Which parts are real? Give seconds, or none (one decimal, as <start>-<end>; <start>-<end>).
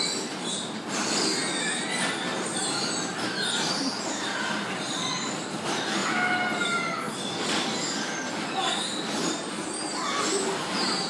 0.0-11.1